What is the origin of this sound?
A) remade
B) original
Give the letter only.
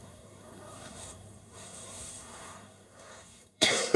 A